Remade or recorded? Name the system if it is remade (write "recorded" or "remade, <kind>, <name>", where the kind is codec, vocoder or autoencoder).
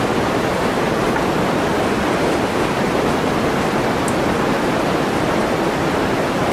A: recorded